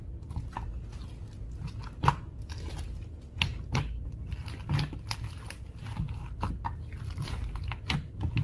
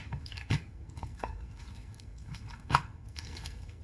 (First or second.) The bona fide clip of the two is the first